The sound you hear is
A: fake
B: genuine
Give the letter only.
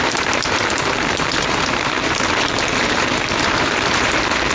A